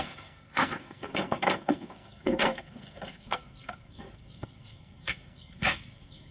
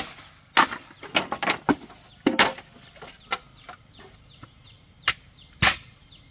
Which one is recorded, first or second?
second